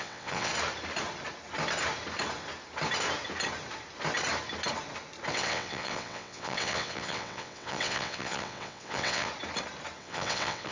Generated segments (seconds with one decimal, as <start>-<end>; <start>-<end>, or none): 0.0-0.5; 5.3-9.3; 10.0-10.7